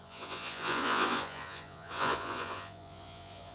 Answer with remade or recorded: remade